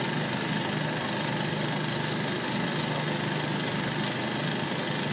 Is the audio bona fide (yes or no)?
yes